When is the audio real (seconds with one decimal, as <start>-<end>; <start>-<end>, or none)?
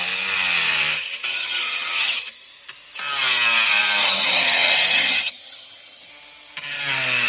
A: 0.0-1.3; 2.2-4.0; 6.1-7.3